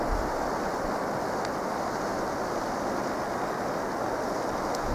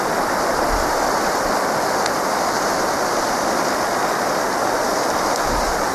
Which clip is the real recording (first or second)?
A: first